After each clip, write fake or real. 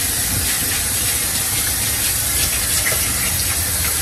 real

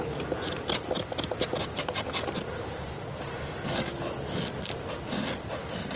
real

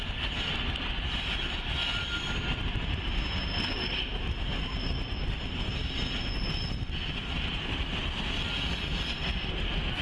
real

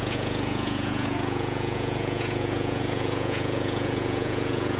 fake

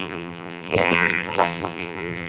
fake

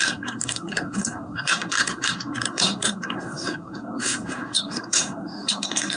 fake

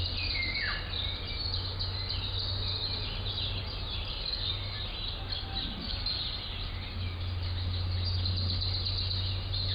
real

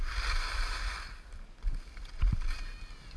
real